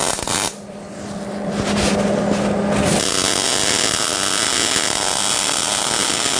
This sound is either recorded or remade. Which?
recorded